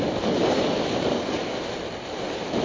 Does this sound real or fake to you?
real